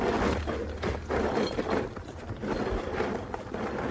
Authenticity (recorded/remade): recorded